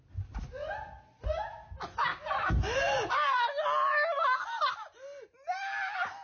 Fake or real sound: real